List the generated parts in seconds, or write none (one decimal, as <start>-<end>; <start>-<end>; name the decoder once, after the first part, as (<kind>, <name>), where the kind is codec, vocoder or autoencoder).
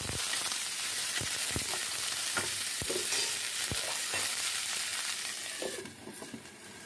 0.0-3.0 (vocoder, BigVGAN v2); 4.0-4.9; 6.4-6.9